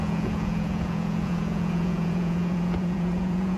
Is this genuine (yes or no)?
no